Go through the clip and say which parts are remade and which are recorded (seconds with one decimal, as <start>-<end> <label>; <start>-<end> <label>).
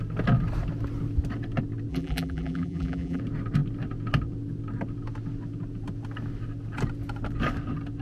0.0-1.9 recorded; 1.9-3.2 remade; 3.2-8.0 recorded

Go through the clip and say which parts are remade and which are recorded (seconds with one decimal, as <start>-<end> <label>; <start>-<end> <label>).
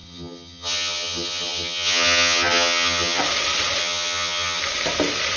0.0-3.2 remade; 3.2-3.8 recorded; 3.8-4.6 remade; 4.6-5.4 recorded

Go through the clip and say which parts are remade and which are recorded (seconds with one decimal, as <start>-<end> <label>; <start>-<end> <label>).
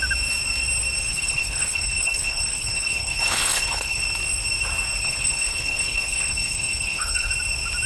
0.0-1.1 recorded; 1.1-4.0 remade; 4.0-5.0 recorded; 5.0-7.3 remade; 7.3-7.9 recorded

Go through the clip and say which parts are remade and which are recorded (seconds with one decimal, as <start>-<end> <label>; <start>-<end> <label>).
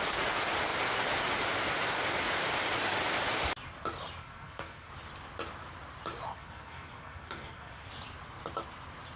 0.0-4.2 recorded; 4.2-4.9 remade; 4.9-6.3 recorded; 6.3-7.9 remade; 7.9-9.2 recorded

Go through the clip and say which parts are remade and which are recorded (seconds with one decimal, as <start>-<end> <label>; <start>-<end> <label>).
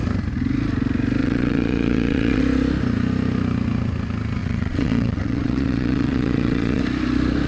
0.0-1.2 recorded; 1.2-2.4 remade; 2.4-4.4 recorded; 4.4-6.8 remade; 6.8-7.5 recorded